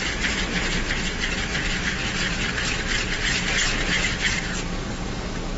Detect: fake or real real